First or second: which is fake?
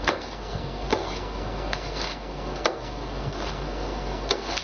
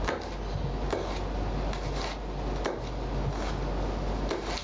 first